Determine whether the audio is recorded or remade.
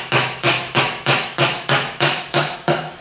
remade